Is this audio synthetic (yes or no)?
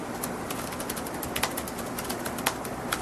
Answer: yes